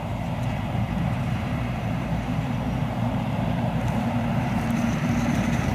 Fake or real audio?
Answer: fake